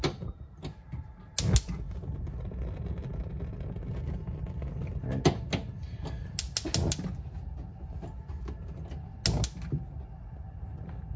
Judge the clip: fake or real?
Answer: real